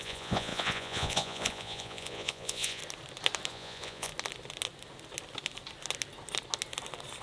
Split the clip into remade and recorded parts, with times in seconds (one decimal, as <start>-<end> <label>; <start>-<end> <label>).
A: 0.0-2.8 remade; 2.8-3.5 recorded; 3.5-4.1 remade; 4.1-7.2 recorded